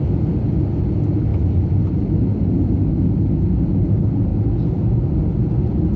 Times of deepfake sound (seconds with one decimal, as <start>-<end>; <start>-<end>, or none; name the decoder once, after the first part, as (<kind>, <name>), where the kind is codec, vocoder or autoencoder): none